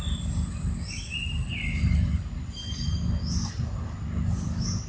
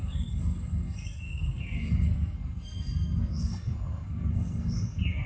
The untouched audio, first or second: first